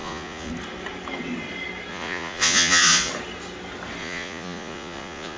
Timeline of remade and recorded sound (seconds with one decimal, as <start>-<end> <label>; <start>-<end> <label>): 0.0-0.5 remade; 0.5-1.9 recorded; 1.9-3.1 remade; 3.1-4.0 recorded; 4.0-5.4 remade